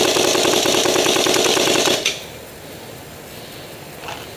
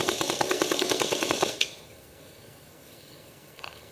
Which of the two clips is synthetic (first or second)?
second